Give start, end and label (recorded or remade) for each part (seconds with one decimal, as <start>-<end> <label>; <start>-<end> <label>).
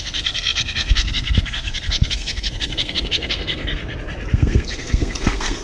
0.0-3.8 remade; 3.8-4.3 recorded; 4.3-5.6 remade